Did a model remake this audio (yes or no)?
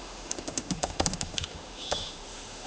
yes